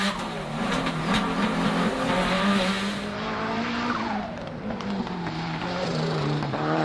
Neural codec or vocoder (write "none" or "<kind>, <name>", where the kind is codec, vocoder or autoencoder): vocoder, BigVGAN v2